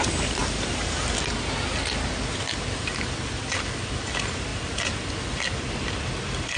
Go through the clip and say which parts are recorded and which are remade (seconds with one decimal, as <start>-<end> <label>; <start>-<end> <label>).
0.0-6.6 recorded